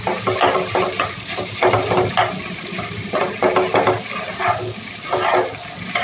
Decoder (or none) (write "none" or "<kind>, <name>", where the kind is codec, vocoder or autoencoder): none